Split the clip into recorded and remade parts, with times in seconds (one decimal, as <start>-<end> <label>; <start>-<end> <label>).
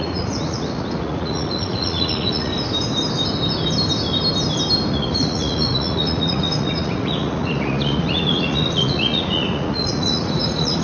0.0-2.5 remade; 2.5-4.9 recorded; 4.9-10.8 remade